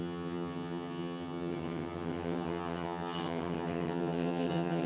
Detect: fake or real fake